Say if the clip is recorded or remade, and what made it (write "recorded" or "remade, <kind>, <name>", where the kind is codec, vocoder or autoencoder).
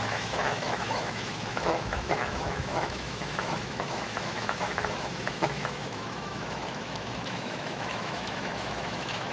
remade, autoencoder, DAC-VAE